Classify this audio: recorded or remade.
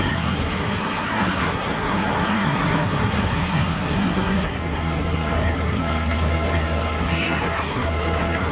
remade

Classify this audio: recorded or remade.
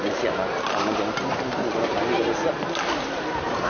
remade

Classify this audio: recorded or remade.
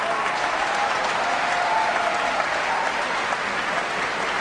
recorded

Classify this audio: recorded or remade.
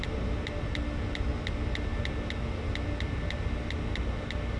recorded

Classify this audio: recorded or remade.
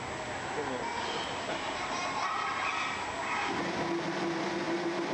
recorded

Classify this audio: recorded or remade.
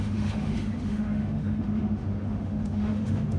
remade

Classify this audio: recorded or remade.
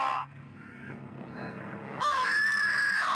remade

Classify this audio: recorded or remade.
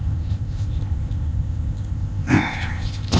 remade